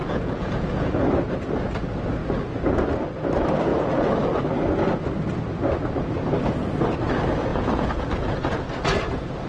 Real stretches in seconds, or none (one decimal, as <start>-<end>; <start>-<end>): 0.9-3.7; 4.4-7.5; 8.4-9.5